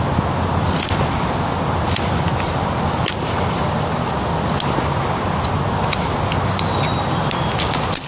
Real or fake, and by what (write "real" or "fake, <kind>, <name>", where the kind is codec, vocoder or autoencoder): real